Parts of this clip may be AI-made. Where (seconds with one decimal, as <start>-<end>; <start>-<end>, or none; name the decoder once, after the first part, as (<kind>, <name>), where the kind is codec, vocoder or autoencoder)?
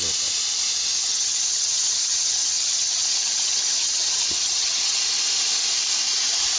1.0-5.0 (vocoder, HiFi-GAN)